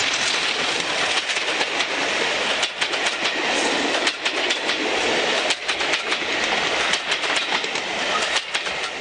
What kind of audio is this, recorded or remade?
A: recorded